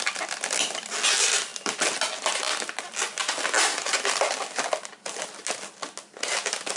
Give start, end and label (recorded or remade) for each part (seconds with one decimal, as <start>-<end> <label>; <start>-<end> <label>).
0.0-6.8 recorded